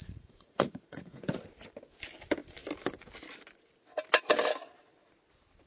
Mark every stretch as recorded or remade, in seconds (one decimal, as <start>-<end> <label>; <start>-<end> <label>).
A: 0.0-1.4 remade; 1.4-5.7 recorded

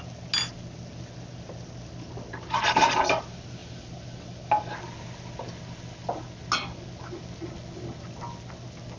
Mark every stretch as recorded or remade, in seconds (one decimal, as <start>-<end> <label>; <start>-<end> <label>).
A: 0.0-9.0 recorded

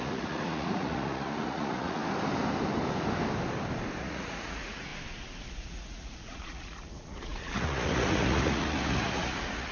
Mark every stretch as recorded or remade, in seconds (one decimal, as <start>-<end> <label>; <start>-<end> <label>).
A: 0.0-2.0 remade; 2.0-4.0 recorded; 4.0-4.9 remade; 4.9-5.5 recorded; 5.5-9.7 remade

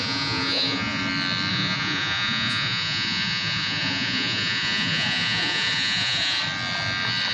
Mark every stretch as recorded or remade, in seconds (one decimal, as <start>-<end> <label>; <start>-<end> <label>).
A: 0.0-1.0 remade; 1.0-1.5 recorded; 1.5-6.4 remade; 6.4-7.3 recorded